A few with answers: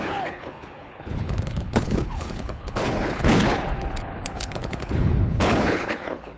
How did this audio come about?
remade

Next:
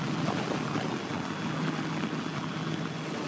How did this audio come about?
recorded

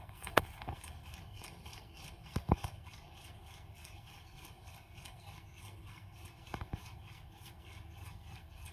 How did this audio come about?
remade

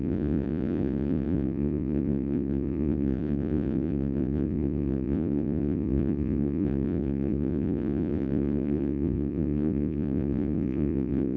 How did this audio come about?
remade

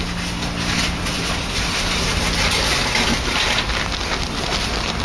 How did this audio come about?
recorded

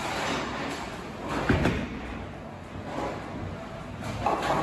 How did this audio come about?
recorded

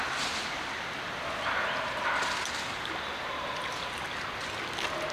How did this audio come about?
recorded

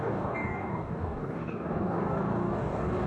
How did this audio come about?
remade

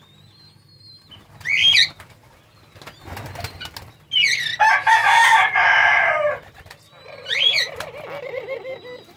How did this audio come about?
recorded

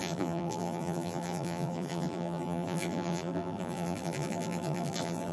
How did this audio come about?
remade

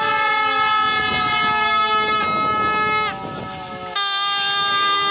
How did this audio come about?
recorded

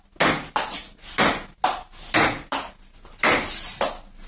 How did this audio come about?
recorded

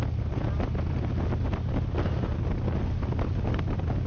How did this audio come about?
recorded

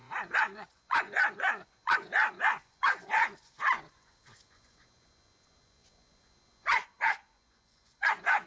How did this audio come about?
remade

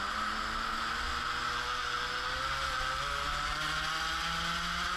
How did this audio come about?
recorded